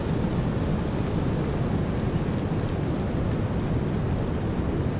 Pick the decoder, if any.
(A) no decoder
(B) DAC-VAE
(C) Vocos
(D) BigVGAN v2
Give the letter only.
A